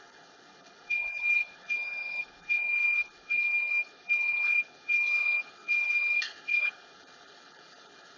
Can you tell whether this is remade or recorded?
remade